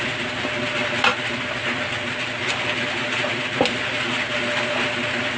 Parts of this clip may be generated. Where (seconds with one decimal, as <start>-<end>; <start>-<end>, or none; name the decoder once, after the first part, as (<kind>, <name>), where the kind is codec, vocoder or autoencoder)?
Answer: none